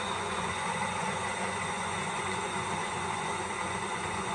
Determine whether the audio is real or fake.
fake